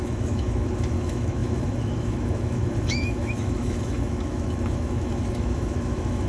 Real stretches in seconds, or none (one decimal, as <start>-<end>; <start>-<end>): none